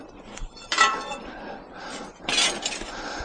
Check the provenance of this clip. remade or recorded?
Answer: remade